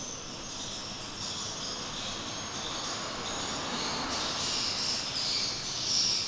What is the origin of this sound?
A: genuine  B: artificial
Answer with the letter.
A